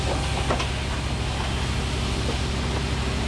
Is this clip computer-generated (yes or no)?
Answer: no